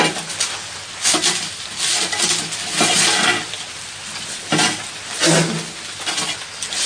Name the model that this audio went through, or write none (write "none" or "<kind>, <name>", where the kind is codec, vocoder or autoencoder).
none